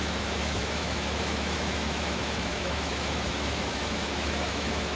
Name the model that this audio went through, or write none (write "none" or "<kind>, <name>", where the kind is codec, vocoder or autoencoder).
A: autoencoder, DAC-VAE